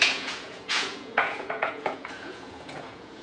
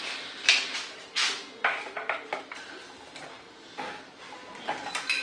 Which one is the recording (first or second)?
second